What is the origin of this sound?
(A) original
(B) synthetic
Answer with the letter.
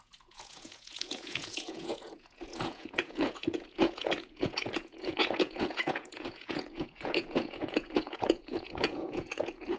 B